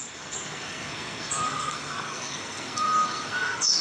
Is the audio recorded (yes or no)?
no